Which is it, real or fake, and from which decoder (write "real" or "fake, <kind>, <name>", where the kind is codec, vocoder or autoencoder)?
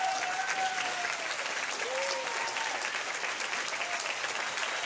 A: real